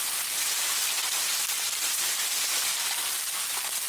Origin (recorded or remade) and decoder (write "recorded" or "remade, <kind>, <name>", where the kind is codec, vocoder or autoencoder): recorded